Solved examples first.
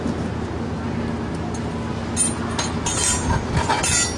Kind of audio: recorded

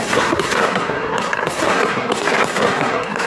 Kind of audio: remade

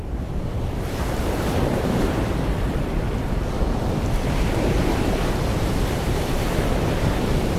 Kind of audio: remade